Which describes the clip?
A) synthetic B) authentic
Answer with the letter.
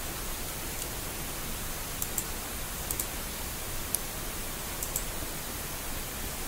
B